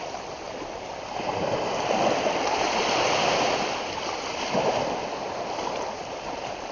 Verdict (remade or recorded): recorded